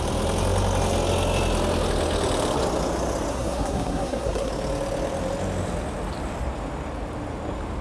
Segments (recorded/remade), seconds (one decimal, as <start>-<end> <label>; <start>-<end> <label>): 0.0-3.3 recorded; 3.3-4.5 remade; 4.5-7.8 recorded